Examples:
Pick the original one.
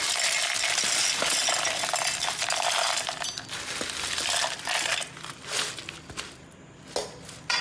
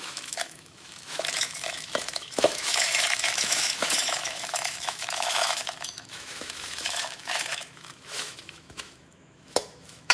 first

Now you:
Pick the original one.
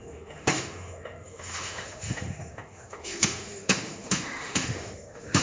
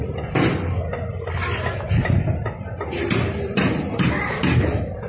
second